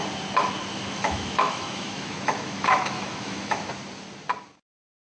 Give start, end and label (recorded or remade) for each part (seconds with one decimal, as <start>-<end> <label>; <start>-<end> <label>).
0.0-0.7 recorded; 0.7-3.7 remade; 3.7-5.0 recorded